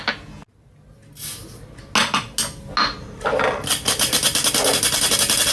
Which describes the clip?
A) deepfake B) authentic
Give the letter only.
B